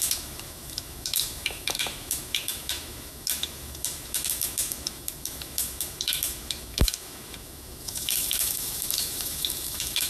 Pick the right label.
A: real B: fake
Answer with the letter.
B